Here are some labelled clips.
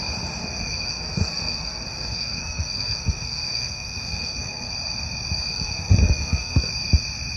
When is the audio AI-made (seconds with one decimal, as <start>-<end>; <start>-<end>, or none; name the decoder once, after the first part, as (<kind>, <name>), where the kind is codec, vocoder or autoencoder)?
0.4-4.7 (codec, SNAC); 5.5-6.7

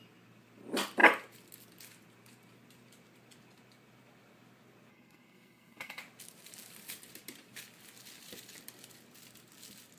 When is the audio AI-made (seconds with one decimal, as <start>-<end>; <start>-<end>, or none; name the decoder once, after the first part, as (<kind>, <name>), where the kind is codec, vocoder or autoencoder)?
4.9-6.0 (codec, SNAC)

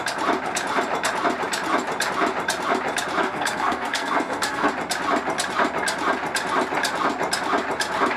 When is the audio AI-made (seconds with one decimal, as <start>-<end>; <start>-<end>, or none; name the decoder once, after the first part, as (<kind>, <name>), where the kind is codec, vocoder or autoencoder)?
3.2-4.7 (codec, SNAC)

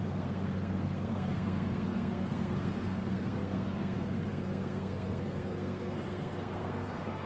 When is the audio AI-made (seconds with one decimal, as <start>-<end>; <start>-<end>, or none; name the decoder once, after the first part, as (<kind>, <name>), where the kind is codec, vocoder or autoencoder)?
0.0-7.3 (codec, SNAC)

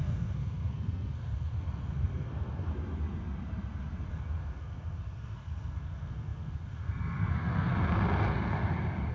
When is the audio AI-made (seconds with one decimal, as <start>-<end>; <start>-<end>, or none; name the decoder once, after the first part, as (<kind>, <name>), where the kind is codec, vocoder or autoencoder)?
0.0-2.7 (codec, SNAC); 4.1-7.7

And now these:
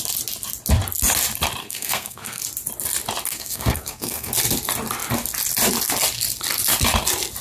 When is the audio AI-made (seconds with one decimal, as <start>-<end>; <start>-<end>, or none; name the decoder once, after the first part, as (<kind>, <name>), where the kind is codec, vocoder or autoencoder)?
1.6-2.4 (codec, SNAC); 3.3-4.3

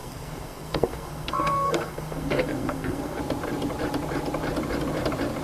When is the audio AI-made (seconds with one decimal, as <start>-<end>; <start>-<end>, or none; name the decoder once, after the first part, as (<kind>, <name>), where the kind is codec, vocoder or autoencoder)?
0.0-3.2 (codec, SNAC)

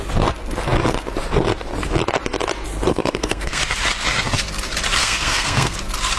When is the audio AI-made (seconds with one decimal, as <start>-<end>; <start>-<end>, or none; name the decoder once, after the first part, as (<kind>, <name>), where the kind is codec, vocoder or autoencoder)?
2.9-3.6 (codec, SNAC); 5.0-5.8